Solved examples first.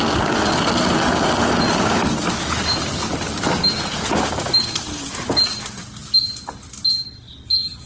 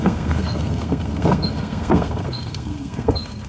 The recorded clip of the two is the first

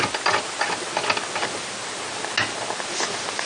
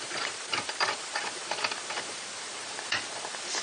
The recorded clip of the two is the first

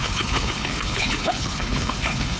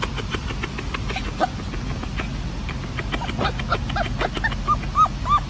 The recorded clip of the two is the second